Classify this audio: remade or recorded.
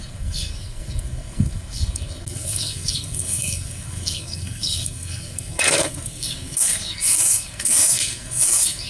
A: remade